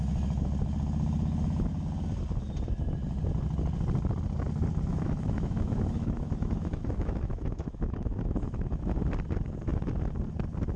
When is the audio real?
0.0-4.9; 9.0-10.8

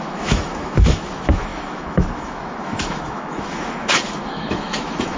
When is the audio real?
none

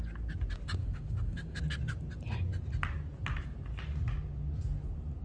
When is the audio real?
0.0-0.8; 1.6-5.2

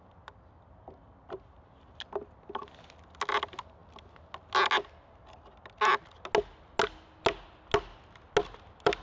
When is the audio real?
0.0-9.0

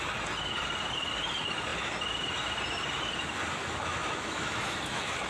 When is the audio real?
0.0-3.6

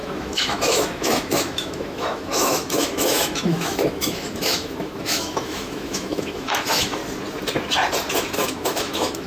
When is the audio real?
7.0-8.1

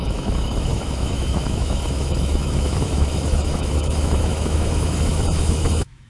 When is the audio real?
none

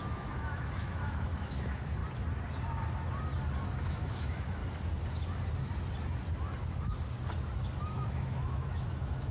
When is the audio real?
2.0-3.8; 4.6-7.9